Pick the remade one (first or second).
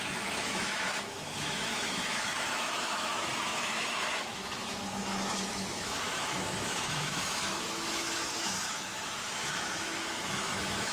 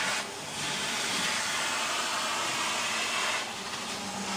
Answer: first